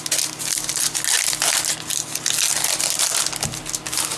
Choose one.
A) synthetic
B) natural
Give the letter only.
B